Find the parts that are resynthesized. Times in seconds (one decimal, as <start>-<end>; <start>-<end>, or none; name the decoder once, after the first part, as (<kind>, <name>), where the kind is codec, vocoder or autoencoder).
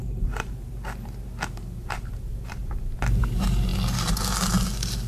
0.0-0.7 (vocoder, BigVGAN v2); 1.5-2.6; 3.2-3.7